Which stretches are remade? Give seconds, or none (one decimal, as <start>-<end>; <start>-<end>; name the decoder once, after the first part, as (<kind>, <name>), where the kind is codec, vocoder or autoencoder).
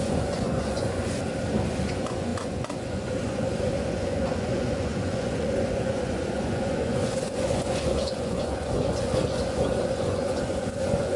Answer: 0.0-1.2 (vocoder, Vocos); 1.7-11.2